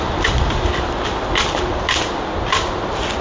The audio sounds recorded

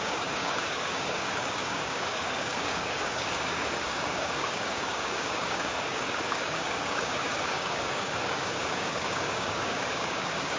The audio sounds remade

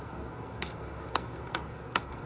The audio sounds remade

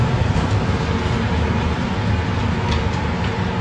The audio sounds recorded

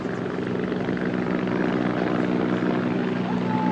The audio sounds recorded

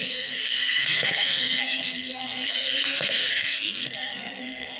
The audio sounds remade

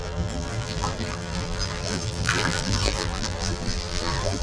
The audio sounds remade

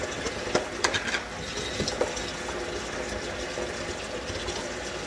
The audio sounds recorded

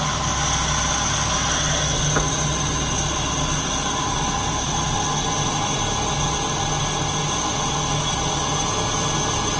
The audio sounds recorded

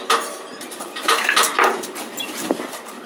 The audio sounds remade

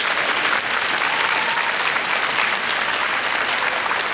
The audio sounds recorded